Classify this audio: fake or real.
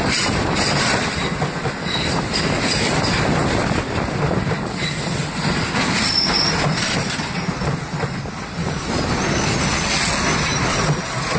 real